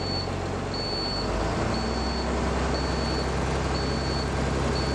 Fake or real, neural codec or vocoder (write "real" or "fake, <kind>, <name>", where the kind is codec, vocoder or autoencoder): real